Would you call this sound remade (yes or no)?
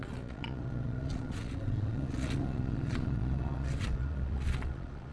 yes